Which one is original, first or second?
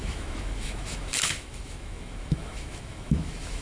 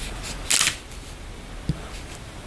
second